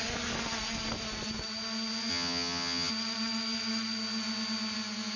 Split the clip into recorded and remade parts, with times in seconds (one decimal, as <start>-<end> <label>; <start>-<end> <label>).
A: 0.0-2.1 recorded; 2.1-2.9 remade; 2.9-5.2 recorded